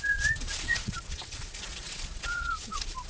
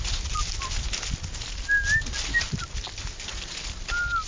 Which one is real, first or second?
second